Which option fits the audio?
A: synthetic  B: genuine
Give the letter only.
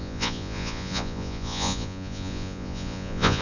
A